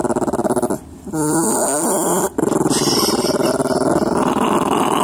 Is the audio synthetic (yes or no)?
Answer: no